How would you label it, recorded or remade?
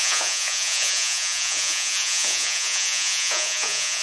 remade